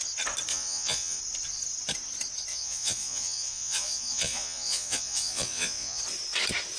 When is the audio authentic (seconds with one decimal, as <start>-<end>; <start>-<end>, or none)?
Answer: 0.0-0.5; 1.2-2.5; 6.0-6.8